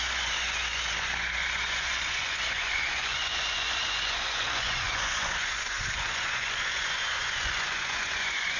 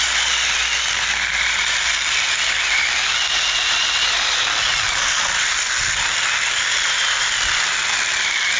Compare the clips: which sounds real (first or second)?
second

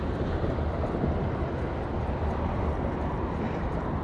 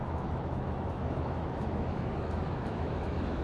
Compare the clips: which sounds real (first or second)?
first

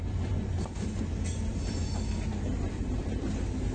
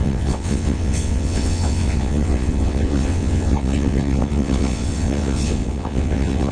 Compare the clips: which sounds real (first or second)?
first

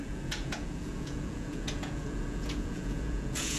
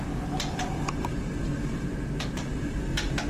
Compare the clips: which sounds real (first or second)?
second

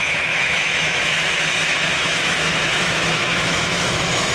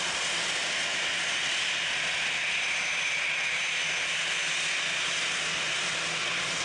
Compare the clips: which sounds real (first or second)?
second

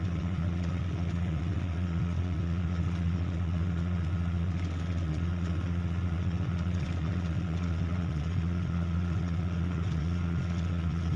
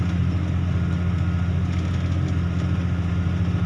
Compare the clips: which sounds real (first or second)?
second